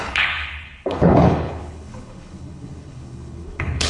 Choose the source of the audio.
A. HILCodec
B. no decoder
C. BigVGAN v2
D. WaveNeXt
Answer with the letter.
A